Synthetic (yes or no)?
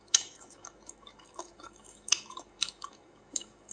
yes